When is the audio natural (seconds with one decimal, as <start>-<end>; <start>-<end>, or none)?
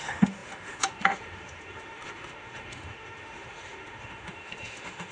none